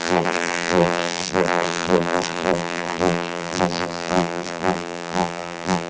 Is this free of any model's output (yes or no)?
no